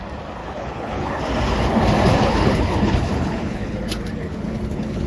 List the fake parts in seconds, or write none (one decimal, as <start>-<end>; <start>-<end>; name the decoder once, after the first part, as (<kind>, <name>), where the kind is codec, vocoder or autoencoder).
0.4-1.2 (codec, HILCodec); 2.1-5.1